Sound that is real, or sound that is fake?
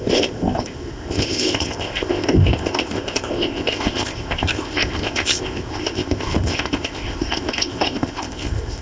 fake